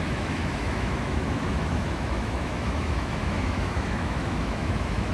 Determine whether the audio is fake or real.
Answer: fake